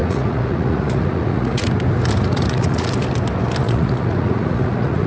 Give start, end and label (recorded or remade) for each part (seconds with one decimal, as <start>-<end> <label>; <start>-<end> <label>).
0.0-1.7 remade; 1.7-2.3 recorded; 2.3-2.9 remade; 2.9-3.6 recorded; 3.6-5.1 remade